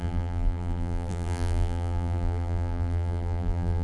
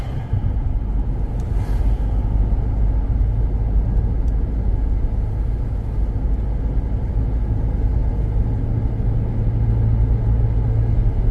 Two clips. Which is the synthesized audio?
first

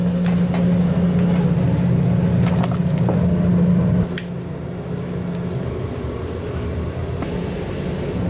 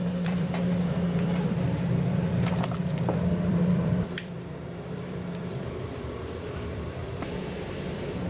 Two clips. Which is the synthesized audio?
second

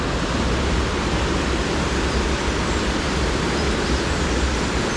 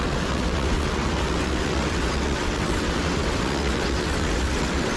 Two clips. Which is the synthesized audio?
second